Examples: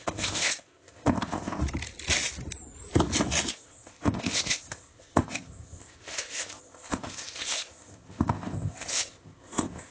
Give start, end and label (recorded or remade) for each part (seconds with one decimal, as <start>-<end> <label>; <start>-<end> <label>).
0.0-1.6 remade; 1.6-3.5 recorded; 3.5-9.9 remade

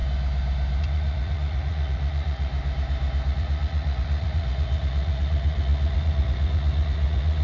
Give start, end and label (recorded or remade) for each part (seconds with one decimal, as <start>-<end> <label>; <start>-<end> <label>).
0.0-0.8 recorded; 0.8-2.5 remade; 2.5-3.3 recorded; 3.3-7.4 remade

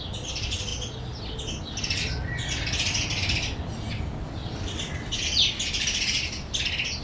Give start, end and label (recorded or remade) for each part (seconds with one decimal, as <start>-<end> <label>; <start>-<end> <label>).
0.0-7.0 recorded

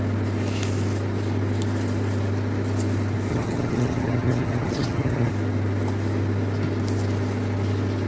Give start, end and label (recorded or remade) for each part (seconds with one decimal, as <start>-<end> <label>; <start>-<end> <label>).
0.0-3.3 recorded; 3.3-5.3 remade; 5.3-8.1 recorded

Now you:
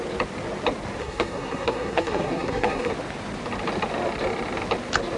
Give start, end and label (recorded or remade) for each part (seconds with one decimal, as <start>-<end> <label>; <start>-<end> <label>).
0.0-1.0 recorded; 1.0-2.9 remade; 2.9-5.2 recorded

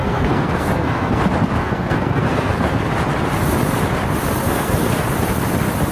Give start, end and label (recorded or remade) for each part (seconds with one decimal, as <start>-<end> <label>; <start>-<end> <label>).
0.0-1.2 remade; 1.2-1.6 recorded; 1.6-2.9 remade; 2.9-4.4 recorded; 4.4-4.9 remade; 4.9-5.9 recorded

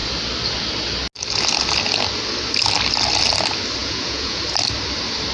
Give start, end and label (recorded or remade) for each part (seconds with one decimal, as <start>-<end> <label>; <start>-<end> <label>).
0.0-3.8 recorded; 3.8-4.4 remade; 4.4-5.3 recorded